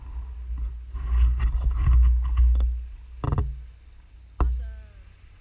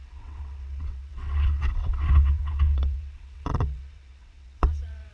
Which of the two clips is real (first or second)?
first